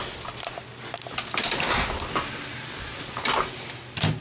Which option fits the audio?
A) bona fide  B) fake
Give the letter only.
A